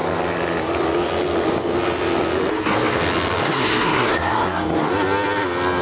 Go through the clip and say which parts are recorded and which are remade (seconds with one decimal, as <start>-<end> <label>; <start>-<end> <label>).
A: 0.0-2.5 recorded; 2.5-3.0 remade; 3.0-3.4 recorded; 3.4-4.9 remade; 4.9-5.8 recorded